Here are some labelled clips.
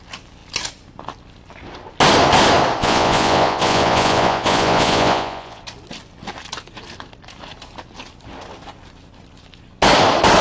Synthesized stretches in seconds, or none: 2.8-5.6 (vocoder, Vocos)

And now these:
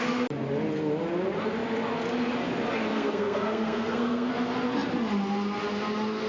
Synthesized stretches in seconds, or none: 2.9-4.3 (codec, SNAC)

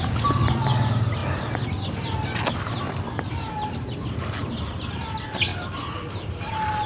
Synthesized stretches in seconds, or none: none

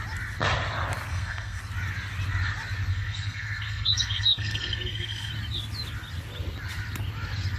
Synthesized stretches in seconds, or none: 1.1-1.6 (codec, SNAC); 2.9-5.3

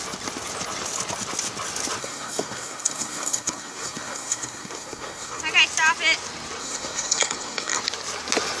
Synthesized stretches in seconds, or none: 2.0-5.4 (codec, SNAC); 6.6-7.8

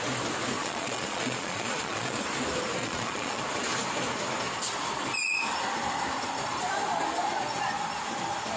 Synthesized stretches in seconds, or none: 0.6-2.2 (vocoder, Vocos); 2.8-3.4